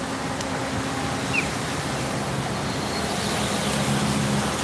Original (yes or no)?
yes